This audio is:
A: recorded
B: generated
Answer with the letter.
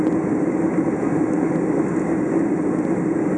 A